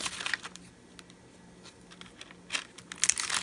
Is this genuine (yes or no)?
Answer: yes